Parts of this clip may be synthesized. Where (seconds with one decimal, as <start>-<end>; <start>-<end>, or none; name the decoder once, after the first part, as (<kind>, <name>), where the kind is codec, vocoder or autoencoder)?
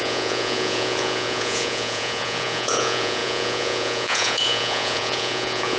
0.0-5.8 (vocoder, Vocos)